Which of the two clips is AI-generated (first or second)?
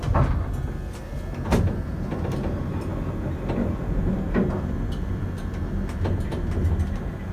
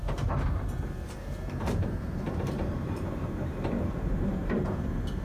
second